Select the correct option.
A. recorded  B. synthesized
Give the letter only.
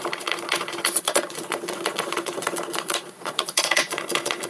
B